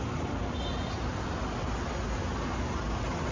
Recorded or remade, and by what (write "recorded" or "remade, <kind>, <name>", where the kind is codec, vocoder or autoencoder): recorded